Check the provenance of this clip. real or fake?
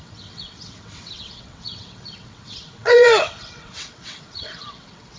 fake